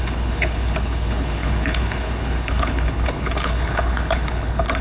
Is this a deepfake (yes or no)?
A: yes